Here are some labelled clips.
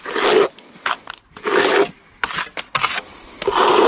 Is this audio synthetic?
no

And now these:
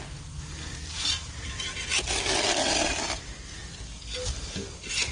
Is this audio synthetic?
no